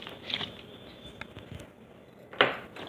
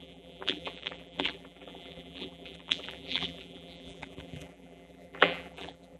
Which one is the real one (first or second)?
first